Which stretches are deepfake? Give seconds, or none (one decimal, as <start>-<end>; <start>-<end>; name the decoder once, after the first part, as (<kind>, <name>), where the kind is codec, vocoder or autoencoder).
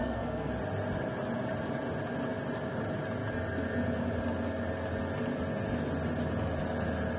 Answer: 0.0-0.5 (codec, SNAC)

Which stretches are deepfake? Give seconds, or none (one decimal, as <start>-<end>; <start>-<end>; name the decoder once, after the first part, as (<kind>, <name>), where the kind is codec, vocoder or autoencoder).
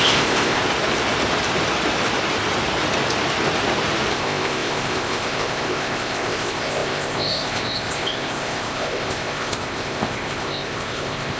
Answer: 0.0-0.6 (codec, ZipCodec); 4.1-11.4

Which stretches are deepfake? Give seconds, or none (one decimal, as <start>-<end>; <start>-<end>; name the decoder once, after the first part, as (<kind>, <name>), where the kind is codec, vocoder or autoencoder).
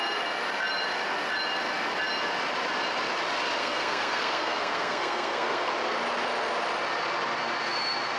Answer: 3.6-5.7 (codec, SNAC)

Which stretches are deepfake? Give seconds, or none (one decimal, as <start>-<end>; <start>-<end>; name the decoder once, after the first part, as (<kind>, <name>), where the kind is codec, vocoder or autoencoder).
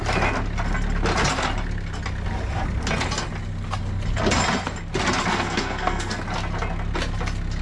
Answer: 5.3-6.2 (codec, SNAC)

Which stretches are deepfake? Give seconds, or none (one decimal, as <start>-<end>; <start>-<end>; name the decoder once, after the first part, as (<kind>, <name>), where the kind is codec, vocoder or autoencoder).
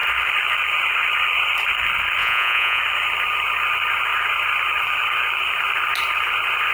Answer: 2.2-2.8 (vocoder, Vocos)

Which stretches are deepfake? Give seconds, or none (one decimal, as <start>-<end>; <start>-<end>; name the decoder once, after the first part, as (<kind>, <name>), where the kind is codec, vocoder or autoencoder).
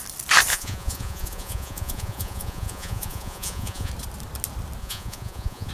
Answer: 0.5-3.9 (vocoder, Vocos); 4.8-5.7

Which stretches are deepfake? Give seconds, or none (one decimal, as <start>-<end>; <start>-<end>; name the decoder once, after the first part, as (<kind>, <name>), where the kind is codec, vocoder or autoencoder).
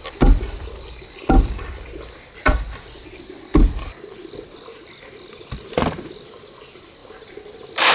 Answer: none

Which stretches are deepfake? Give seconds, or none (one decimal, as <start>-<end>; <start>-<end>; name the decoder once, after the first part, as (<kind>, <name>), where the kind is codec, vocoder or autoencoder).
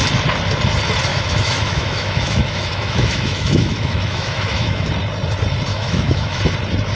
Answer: 1.1-4.9 (autoencoder, DAC-VAE); 5.7-6.4